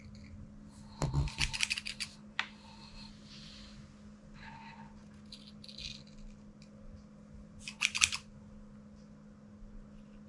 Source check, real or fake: real